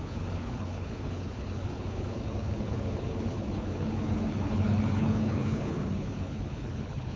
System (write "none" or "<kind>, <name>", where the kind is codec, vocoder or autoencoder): codec, HILCodec